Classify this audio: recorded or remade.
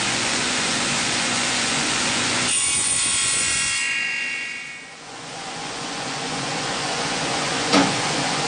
remade